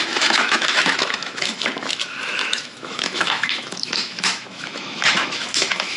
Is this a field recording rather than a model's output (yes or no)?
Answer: no